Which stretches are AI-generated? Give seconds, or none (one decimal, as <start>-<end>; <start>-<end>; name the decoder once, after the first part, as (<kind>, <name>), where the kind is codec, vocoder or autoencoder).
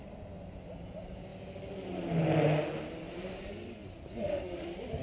none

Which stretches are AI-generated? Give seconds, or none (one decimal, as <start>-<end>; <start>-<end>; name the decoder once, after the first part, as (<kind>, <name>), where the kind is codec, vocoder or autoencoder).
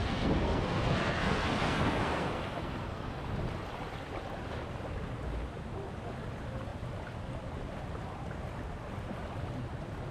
0.0-3.2 (codec, SNAC)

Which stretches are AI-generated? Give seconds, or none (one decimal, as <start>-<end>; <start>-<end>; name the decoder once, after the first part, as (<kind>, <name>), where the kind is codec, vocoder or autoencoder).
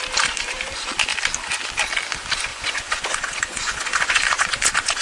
2.5-5.0 (vocoder, Vocos)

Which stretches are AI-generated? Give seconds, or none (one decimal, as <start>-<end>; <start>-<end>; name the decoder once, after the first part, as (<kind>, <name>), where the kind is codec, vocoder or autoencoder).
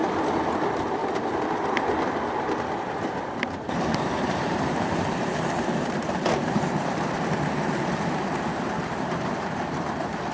0.6-1.0 (vocoder, BigVGAN v2); 2.7-10.3